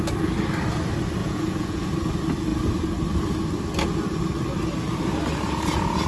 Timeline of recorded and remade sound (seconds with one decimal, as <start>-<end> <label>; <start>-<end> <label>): 0.0-1.2 recorded; 1.2-1.9 remade; 1.9-6.1 recorded